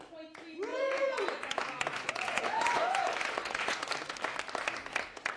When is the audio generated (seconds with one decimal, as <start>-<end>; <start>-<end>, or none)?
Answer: 0.7-3.9